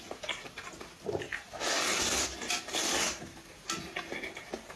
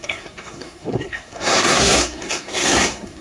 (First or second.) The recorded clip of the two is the first